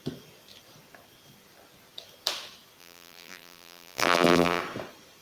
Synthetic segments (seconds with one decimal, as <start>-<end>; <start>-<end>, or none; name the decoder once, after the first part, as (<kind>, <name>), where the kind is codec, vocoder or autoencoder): 2.8-4.6 (vocoder, BigVGAN v2)